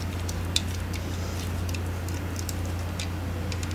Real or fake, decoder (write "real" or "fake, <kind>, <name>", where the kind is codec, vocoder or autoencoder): real